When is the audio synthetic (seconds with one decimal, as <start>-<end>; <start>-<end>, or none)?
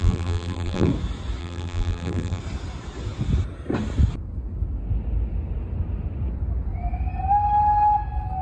0.0-0.9; 1.4-2.4